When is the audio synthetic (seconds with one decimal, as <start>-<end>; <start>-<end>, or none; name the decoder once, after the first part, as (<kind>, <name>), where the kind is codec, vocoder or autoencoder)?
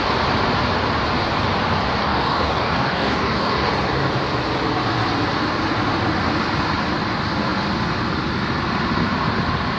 2.0-3.7 (codec, DAC)